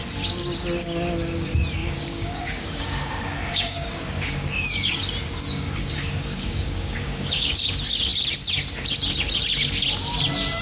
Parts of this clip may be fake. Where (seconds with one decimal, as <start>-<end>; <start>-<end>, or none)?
1.8-5.0; 5.5-7.6